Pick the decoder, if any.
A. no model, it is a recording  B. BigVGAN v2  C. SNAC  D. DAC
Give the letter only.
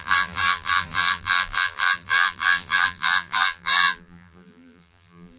B